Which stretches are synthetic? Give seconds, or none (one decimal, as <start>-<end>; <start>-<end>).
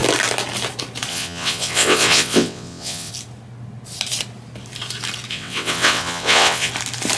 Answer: 1.1-3.1; 5.3-6.7